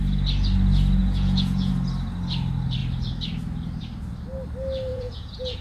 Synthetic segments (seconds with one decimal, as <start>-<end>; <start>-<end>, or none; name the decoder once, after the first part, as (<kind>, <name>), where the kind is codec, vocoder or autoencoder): 1.0-1.7 (vocoder, Vocos); 4.9-5.6